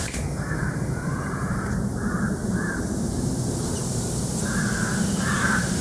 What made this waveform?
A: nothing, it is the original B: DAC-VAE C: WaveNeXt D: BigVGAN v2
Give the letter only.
D